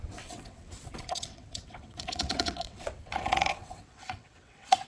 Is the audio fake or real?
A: fake